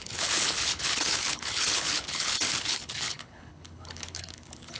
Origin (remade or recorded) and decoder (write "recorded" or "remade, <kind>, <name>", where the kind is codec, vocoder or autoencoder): remade, codec, HILCodec